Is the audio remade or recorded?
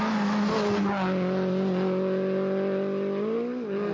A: recorded